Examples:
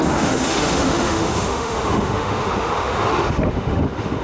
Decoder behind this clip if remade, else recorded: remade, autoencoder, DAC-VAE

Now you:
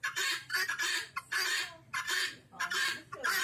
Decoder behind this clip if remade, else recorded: recorded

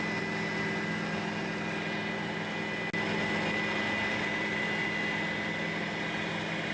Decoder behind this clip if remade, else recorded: recorded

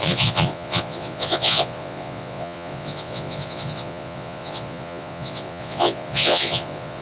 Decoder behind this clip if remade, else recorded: remade, vocoder, Vocos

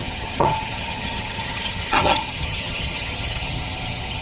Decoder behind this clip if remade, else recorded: remade, vocoder, HiFi-GAN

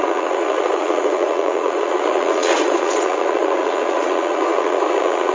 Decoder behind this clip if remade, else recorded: remade, vocoder, Vocos